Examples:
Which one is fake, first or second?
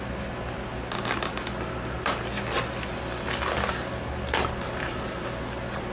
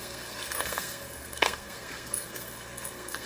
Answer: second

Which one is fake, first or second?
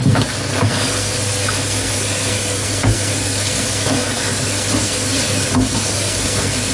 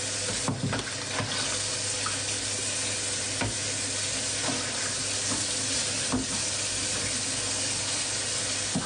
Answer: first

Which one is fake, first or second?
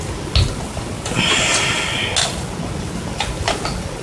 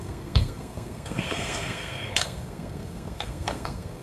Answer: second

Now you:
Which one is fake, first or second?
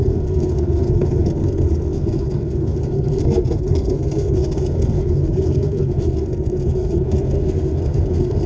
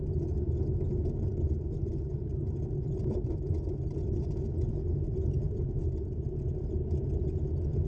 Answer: first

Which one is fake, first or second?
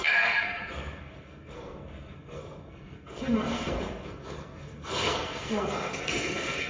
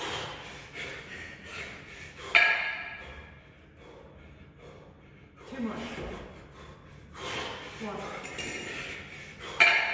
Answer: first